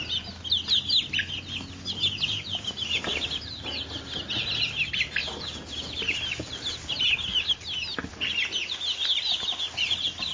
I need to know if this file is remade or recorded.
recorded